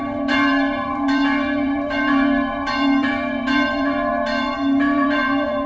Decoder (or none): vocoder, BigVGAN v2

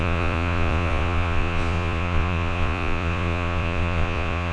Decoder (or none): vocoder, Vocos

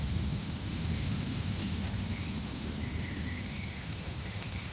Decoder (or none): autoencoder, DAC-VAE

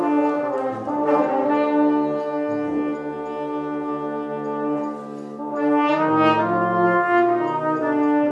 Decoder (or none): none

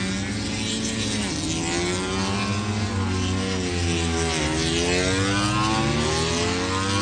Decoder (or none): none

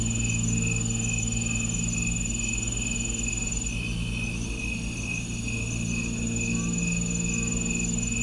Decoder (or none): none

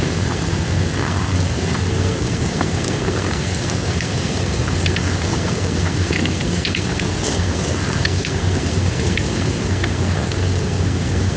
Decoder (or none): codec, SNAC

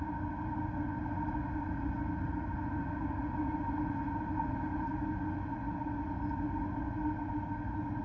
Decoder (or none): none